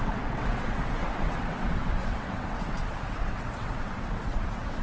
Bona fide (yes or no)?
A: no